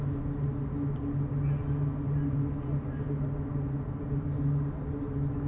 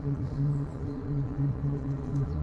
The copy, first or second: second